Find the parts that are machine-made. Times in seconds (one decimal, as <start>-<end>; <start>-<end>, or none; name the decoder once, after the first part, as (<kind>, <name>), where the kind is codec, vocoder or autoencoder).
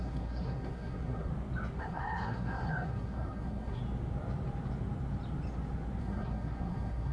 0.0-1.3 (codec, SNAC); 1.8-3.8; 6.0-7.1